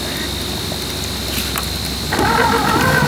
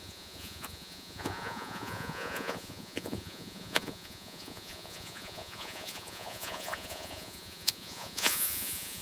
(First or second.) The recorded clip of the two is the first